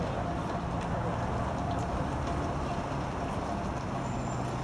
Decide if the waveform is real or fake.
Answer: real